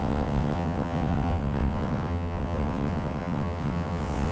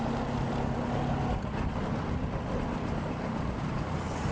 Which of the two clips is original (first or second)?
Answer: second